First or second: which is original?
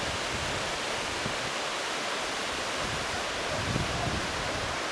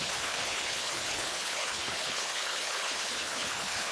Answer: first